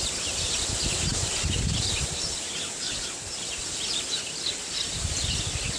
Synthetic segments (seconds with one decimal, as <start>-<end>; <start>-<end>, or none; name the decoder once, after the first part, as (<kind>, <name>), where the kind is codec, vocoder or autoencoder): none